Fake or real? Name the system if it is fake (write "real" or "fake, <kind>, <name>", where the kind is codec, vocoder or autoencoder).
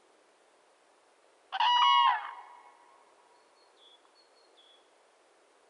real